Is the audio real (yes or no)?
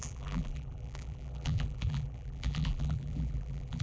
no